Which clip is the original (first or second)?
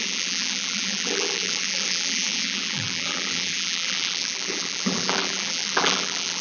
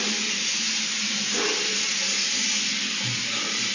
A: second